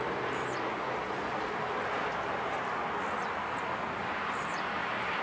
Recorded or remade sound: recorded